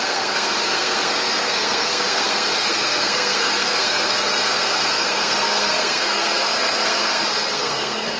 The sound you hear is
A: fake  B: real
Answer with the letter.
A